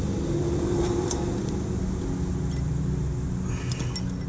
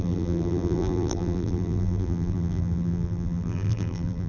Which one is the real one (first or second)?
first